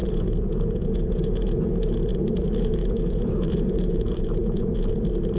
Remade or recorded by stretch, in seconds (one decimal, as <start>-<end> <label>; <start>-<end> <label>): 0.0-1.7 remade; 1.7-2.1 recorded; 2.1-4.9 remade; 4.9-5.4 recorded